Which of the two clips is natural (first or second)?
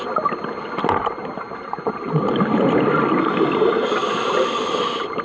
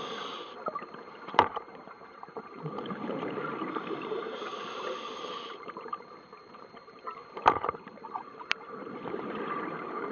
first